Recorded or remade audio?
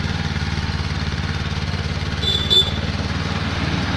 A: recorded